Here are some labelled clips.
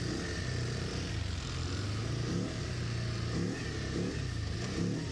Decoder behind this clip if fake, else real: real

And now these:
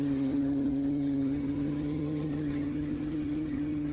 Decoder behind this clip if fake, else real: fake, vocoder, HiFi-GAN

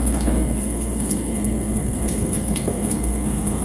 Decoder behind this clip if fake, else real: fake, codec, SNAC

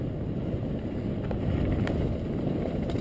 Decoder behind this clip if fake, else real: real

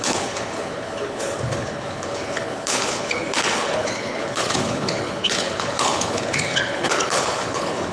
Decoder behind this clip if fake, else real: fake, codec, HILCodec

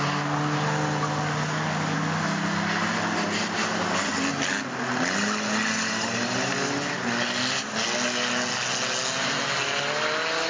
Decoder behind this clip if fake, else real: real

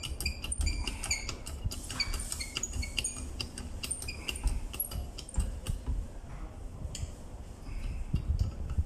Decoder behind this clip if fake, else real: real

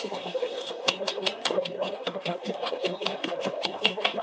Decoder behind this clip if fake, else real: fake, codec, SNAC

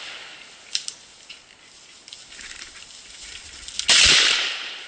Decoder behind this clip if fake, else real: real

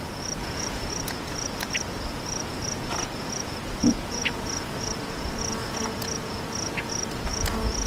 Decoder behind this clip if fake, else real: fake, vocoder, Vocos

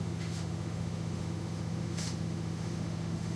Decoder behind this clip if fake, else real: fake, autoencoder, DAC-VAE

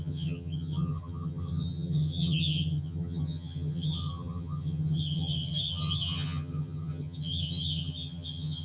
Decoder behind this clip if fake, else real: fake, vocoder, HiFi-GAN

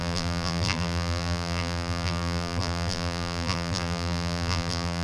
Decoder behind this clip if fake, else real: fake, vocoder, BigVGAN v2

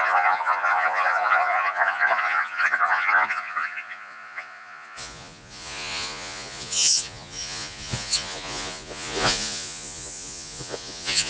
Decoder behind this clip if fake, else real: fake, vocoder, Vocos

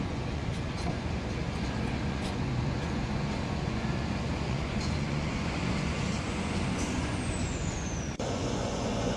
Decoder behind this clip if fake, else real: fake, vocoder, Vocos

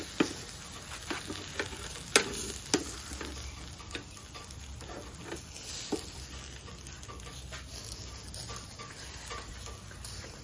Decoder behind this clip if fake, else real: real